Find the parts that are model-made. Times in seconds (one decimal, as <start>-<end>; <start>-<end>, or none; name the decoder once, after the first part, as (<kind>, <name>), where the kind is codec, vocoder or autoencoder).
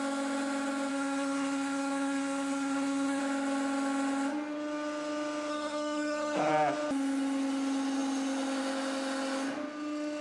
0.9-3.2 (codec, SNAC); 5.5-6.5